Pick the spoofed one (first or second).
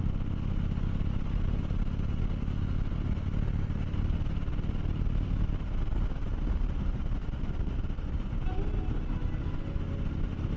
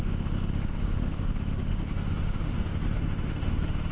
second